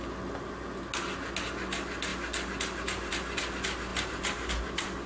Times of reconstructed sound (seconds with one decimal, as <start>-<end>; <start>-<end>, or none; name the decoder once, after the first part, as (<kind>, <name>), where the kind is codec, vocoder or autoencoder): 3.9-4.5 (vocoder, BigVGAN v2)